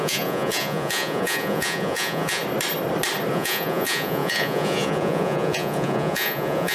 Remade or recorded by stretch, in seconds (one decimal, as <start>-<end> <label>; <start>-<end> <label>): 0.0-2.4 remade; 2.4-3.3 recorded; 3.3-6.7 remade

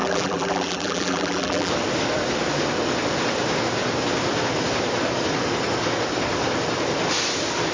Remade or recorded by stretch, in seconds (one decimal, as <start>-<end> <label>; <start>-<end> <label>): 0.0-1.7 remade; 1.7-7.7 recorded

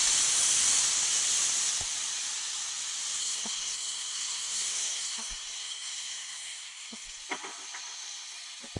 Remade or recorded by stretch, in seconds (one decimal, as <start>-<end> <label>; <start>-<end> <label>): 0.0-3.2 recorded; 3.2-7.2 remade; 7.2-8.8 recorded

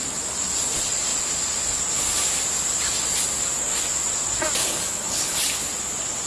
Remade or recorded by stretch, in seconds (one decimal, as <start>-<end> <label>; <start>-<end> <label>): 0.0-4.6 recorded; 4.6-5.4 remade; 5.4-6.3 recorded

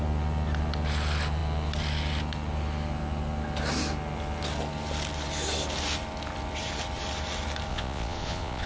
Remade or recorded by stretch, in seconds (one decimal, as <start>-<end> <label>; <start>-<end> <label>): 0.0-7.7 recorded; 7.7-8.7 remade

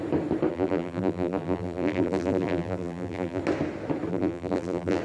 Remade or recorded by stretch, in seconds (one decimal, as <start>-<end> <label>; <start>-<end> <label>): 0.0-0.5 recorded; 0.5-3.4 remade; 3.4-4.1 recorded; 4.1-5.0 remade

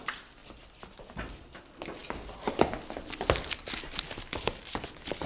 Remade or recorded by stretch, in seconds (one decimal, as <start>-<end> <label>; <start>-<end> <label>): 0.0-5.3 recorded